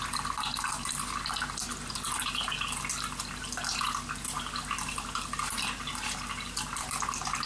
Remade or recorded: recorded